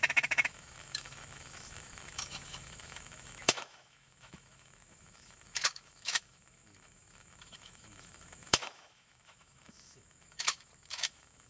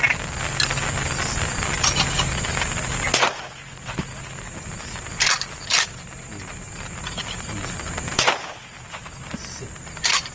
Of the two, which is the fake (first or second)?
first